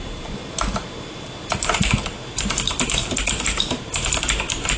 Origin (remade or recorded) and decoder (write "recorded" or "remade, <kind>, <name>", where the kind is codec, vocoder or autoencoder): remade, vocoder, BigVGAN v2